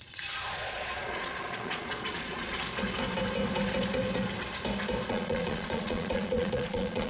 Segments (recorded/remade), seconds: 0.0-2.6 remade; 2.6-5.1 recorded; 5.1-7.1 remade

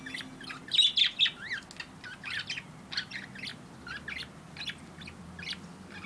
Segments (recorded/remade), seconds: 0.0-6.1 recorded

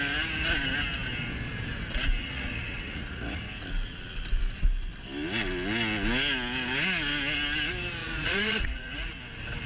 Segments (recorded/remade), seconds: 0.0-2.2 recorded; 2.2-3.4 remade; 3.4-8.0 recorded; 8.0-9.1 remade; 9.1-9.7 recorded

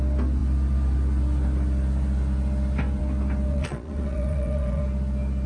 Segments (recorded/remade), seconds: 0.0-3.5 recorded; 3.5-4.8 remade; 4.8-5.5 recorded